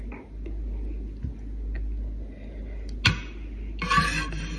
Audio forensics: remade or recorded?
recorded